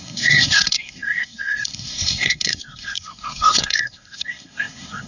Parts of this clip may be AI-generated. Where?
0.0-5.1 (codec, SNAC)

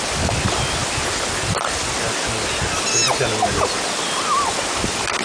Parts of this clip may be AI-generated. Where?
none

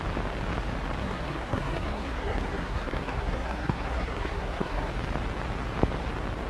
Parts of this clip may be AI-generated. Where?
1.0-4.9 (codec, SNAC)

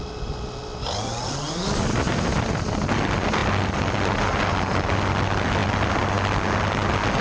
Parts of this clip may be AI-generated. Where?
none

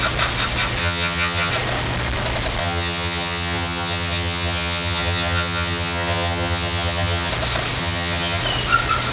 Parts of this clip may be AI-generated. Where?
0.8-1.5 (vocoder, HiFi-GAN); 2.6-7.3; 7.8-8.4

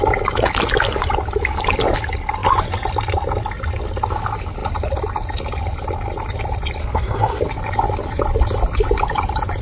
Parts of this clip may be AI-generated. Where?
6.8-7.4 (codec, SNAC)

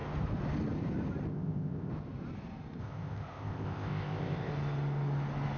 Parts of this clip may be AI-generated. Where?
1.3-1.9 (codec, ZipCodec); 2.8-4.5

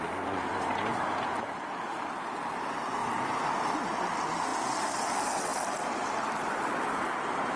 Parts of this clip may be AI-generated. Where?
3.0-3.7 (vocoder, BigVGAN v2); 4.5-5.1